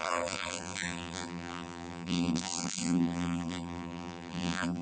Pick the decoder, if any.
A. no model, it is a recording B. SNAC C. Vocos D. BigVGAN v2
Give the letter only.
D